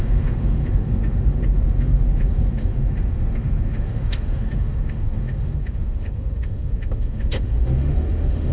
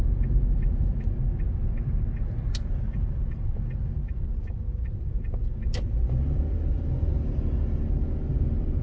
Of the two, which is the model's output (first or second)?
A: first